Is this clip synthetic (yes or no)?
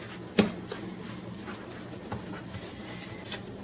no